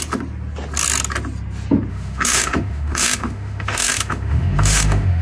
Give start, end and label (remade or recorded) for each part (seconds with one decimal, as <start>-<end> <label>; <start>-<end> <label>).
0.0-1.9 recorded; 1.9-5.2 remade